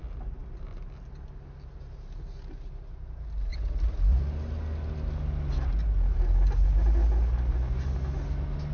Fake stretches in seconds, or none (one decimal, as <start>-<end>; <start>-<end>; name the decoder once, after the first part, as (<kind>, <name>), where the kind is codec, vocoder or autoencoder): 3.5-4.2 (vocoder, BigVGAN v2)